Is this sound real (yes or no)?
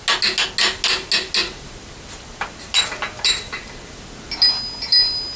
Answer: yes